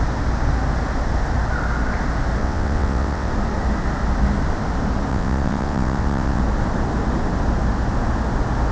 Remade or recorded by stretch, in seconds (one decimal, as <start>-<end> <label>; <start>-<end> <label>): 0.0-2.4 recorded; 2.4-3.3 remade; 3.3-5.1 recorded; 5.1-6.4 remade; 6.4-8.7 recorded